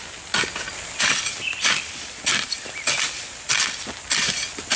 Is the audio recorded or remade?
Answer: recorded